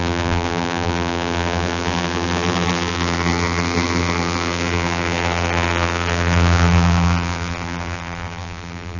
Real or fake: fake